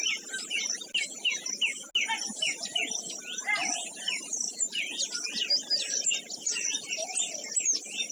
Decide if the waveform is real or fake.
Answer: real